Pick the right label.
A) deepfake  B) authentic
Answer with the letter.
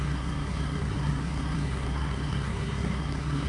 A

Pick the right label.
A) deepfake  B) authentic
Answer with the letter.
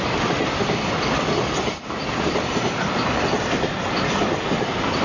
B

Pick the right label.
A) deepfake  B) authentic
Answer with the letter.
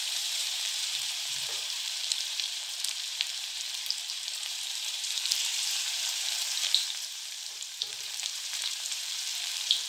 A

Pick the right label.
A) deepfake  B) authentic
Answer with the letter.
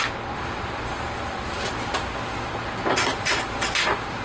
B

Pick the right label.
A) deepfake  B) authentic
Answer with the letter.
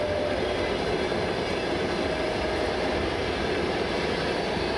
B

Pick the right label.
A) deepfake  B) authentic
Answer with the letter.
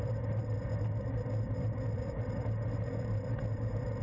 B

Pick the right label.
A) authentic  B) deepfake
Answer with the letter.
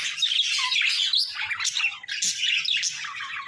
A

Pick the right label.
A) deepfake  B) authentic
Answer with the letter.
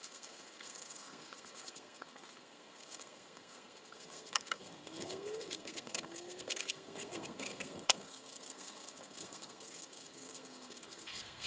A